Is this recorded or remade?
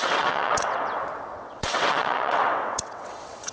remade